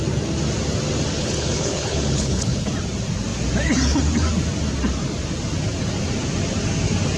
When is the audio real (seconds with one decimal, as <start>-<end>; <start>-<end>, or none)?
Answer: 0.0-1.2; 2.7-7.2